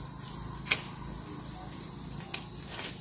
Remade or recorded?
recorded